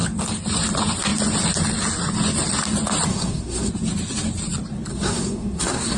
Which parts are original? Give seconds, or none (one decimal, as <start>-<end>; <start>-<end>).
0.0-3.1; 3.7-4.9